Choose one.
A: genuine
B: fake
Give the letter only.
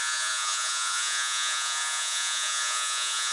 B